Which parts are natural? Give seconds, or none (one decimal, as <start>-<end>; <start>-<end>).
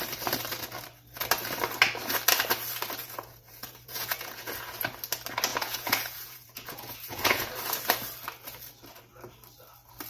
0.0-3.0; 4.5-5.5; 7.5-10.1